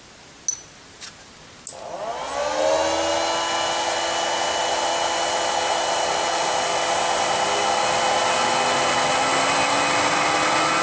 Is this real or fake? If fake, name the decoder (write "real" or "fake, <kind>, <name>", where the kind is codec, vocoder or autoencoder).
real